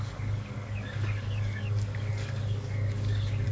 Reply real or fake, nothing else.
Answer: fake